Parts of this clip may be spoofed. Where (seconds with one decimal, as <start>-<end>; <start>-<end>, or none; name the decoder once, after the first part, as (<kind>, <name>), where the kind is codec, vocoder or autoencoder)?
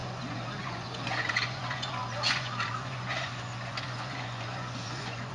0.0-5.3 (vocoder, Vocos)